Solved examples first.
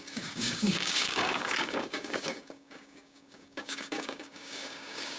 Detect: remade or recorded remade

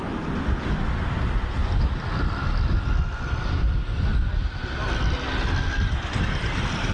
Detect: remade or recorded recorded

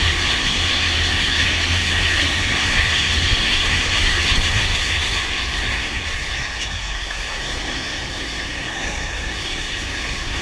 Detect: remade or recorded remade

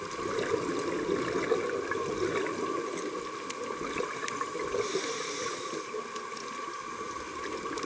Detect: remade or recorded recorded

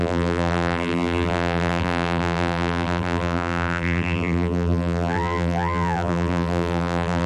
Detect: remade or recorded remade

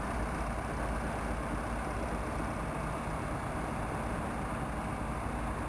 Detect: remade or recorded recorded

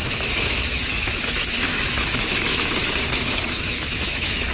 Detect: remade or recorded remade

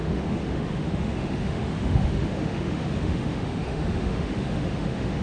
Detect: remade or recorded remade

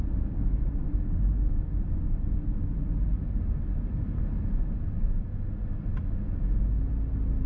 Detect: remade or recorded recorded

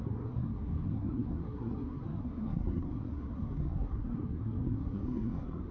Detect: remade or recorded remade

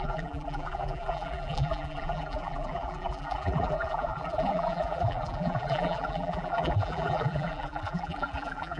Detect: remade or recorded remade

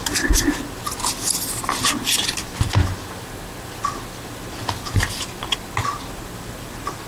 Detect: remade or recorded recorded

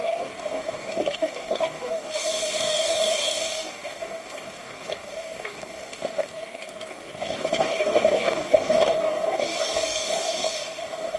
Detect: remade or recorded remade